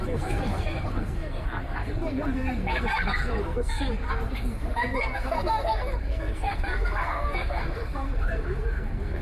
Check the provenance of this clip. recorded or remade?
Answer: remade